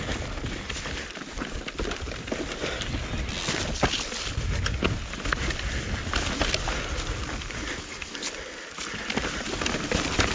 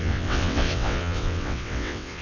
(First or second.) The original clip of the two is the first